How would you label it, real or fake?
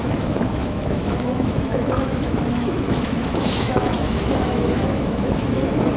fake